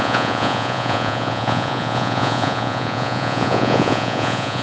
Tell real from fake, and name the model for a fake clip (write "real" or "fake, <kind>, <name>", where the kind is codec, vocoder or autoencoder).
fake, vocoder, Vocos